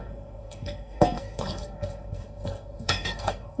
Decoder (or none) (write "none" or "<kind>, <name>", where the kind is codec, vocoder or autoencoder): codec, SNAC